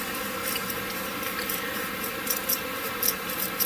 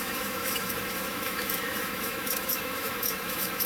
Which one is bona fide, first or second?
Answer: first